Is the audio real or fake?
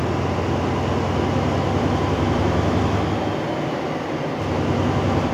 real